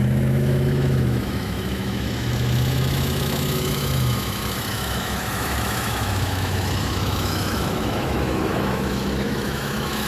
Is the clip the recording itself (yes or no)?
no